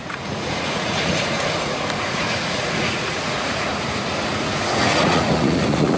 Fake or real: fake